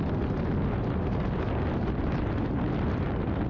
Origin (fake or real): real